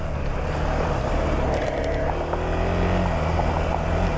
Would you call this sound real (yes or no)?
yes